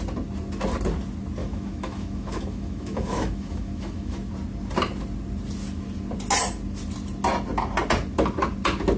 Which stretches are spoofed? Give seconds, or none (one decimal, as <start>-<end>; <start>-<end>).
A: 1.4-4.3